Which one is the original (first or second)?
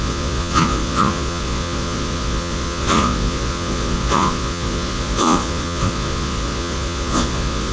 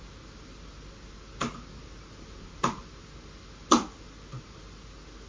second